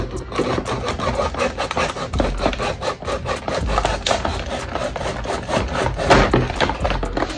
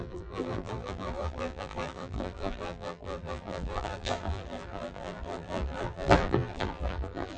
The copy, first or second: second